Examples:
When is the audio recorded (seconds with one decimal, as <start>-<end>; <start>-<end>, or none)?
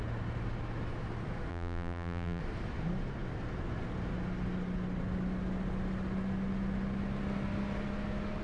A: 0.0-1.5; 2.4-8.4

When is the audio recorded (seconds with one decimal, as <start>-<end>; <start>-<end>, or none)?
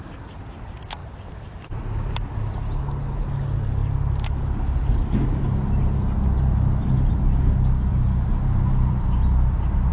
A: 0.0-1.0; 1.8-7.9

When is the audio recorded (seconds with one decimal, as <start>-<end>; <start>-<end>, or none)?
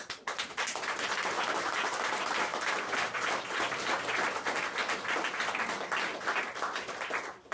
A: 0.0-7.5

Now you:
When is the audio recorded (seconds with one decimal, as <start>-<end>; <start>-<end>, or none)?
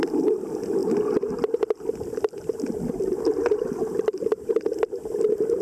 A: none